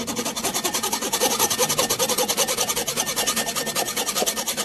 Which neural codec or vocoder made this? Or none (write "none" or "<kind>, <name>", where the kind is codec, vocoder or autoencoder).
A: none